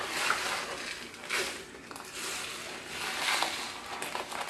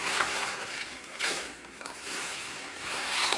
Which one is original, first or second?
first